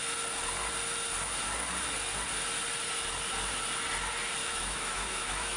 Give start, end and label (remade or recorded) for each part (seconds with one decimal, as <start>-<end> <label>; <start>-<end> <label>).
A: 0.0-4.4 recorded; 4.4-5.6 remade